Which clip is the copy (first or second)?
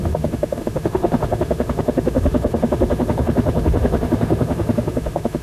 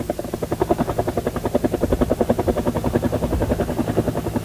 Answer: first